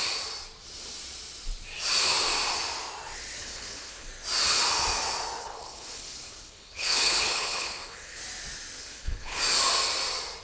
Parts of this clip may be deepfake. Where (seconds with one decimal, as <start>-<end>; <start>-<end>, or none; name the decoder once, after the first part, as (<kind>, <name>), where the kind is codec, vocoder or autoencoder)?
3.4-4.1 (codec, HILCodec); 5.4-8.2; 8.8-9.4